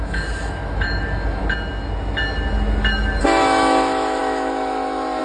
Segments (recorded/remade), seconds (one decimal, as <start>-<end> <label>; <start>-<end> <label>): 0.0-1.4 remade; 1.4-3.2 recorded; 3.2-5.2 remade